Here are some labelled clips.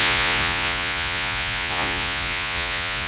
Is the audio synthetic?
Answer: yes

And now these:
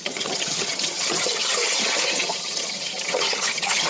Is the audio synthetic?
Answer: yes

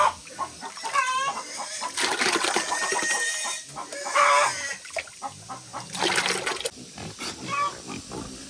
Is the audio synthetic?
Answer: no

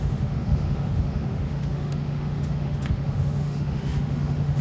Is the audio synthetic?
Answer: yes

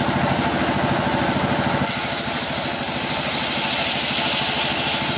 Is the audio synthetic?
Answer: no